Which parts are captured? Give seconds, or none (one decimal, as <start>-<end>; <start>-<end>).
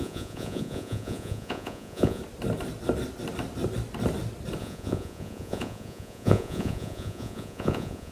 2.2-4.6